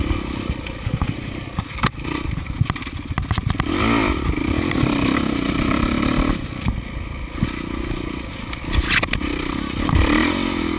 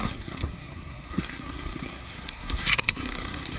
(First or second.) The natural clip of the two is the first